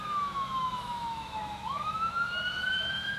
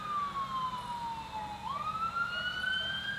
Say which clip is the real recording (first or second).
second